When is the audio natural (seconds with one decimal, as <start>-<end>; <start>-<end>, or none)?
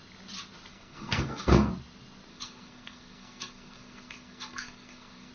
0.0-0.7; 1.7-2.3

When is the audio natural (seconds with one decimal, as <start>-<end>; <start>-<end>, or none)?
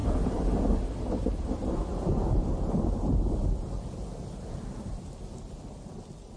0.0-6.4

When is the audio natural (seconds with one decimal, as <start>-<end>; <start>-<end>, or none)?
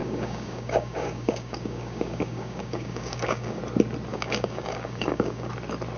3.6-4.1; 5.5-6.0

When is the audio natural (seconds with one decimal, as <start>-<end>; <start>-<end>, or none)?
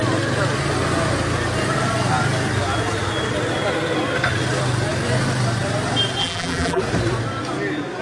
0.0-6.2; 6.8-8.0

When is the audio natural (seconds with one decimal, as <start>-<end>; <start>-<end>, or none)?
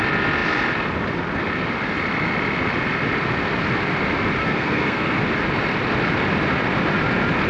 0.0-4.4; 5.2-7.5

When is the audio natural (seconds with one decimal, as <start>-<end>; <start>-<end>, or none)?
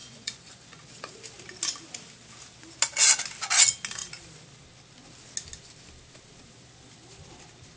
0.8-7.8